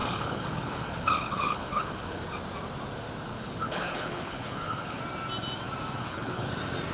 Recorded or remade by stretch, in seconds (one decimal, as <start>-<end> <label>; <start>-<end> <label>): 0.0-2.2 remade; 2.2-3.3 recorded; 3.3-5.0 remade; 5.0-6.0 recorded; 6.0-6.5 remade; 6.5-6.9 recorded